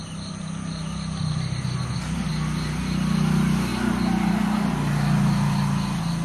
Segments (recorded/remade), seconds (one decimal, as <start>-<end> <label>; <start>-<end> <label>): 0.0-6.2 recorded